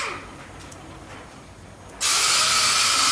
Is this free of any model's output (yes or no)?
yes